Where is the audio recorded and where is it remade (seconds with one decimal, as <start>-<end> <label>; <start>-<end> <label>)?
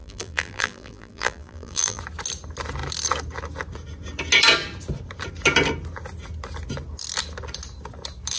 0.0-2.0 remade; 2.0-8.4 recorded